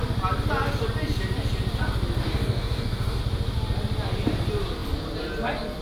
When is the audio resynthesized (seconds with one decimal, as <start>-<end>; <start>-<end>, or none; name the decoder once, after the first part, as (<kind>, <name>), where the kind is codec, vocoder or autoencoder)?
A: 2.2-3.2 (codec, DAC)